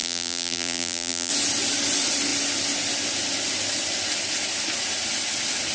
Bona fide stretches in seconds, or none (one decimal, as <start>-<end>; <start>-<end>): 1.3-5.7